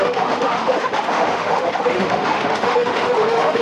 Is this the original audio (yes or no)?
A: no